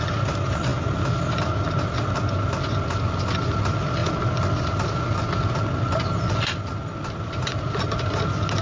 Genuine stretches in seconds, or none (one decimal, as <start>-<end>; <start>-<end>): 0.0-8.6